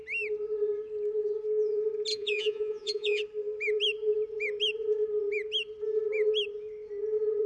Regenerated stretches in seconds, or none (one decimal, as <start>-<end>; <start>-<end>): 2.1-3.2

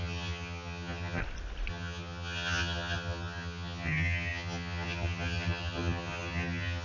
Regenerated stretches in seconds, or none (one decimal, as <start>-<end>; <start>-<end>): 0.0-1.2; 1.7-6.8

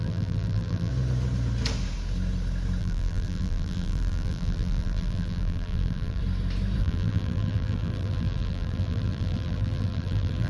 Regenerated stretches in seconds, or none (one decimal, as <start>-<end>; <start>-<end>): 0.0-0.9; 2.8-6.2; 6.8-10.5

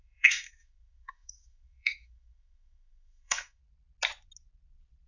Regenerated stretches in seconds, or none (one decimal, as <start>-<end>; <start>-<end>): 0.0-3.6

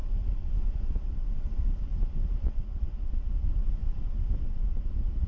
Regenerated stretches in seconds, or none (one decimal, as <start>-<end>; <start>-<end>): 0.0-0.5; 1.9-2.5